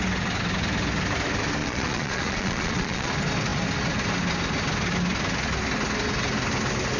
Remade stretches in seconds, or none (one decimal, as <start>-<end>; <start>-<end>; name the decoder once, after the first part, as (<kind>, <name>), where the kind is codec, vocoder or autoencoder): 1.6-3.1 (vocoder, Vocos)